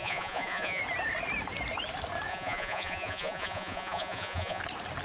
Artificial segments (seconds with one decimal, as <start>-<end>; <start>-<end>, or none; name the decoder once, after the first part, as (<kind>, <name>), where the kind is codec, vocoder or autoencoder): 0.0-0.8 (vocoder, Vocos); 2.3-4.6